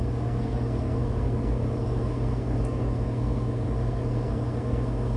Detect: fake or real fake